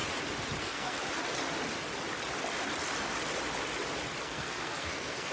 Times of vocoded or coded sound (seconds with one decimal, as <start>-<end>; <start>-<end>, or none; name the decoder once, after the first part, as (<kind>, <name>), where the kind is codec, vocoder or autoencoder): 0.6-1.0 (codec, SNAC); 4.2-5.3